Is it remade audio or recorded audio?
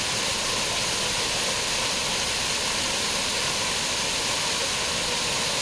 recorded